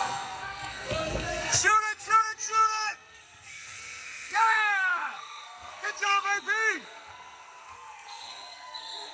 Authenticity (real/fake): fake